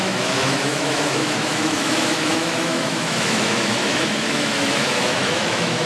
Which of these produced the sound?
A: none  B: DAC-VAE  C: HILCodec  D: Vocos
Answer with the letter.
B